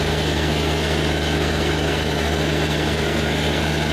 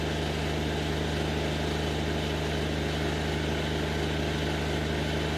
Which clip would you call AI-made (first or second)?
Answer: first